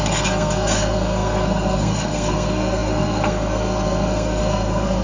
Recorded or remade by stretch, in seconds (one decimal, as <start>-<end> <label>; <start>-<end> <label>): 0.0-5.0 remade